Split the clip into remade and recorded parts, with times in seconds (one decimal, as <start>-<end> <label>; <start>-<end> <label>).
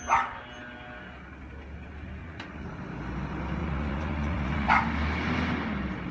0.0-2.2 recorded; 2.2-2.7 remade; 2.7-3.6 recorded; 3.6-4.7 remade; 4.7-6.1 recorded